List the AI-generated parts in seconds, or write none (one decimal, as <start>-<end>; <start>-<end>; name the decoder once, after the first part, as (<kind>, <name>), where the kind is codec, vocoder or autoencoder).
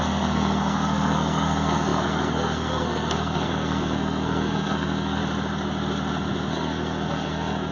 0.0-5.2 (codec, SNAC); 6.5-7.7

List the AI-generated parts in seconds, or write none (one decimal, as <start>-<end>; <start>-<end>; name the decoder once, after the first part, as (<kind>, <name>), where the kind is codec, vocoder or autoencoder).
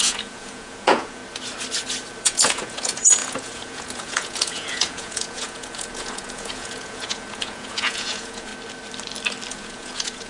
0.0-1.2 (vocoder, Vocos); 2.2-8.5; 9.5-10.3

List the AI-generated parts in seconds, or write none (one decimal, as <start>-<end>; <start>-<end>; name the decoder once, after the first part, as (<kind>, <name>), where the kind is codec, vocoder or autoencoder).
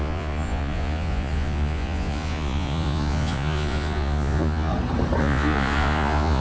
0.0-4.7 (vocoder, Vocos); 5.2-6.4